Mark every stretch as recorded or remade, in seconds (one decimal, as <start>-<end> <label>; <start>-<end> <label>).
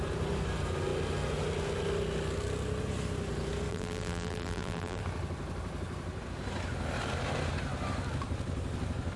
0.0-3.7 recorded; 3.7-5.0 remade; 5.0-9.2 recorded